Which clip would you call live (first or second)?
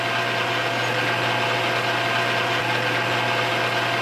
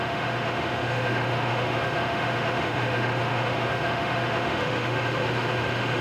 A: first